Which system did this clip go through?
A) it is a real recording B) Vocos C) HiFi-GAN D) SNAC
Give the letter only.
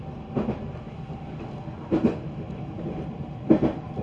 A